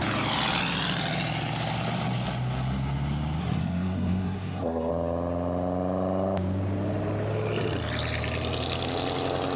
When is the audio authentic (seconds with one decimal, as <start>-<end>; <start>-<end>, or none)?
0.0-3.4; 4.9-9.6

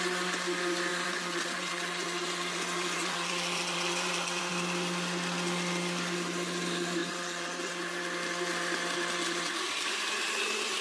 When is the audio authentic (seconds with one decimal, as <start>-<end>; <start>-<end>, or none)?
0.0-0.9; 4.4-7.0; 7.7-10.8